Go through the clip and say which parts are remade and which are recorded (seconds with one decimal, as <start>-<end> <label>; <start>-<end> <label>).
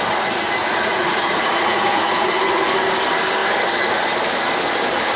0.0-0.6 recorded; 0.6-2.4 remade; 2.4-5.2 recorded